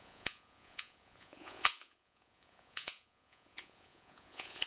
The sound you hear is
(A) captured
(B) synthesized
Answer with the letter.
B